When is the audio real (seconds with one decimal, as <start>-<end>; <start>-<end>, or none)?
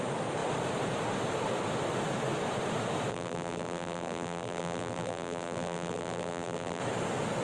0.0-3.1; 6.8-7.4